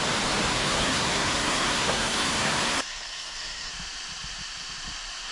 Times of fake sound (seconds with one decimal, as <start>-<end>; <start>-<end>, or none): 0.5-3.7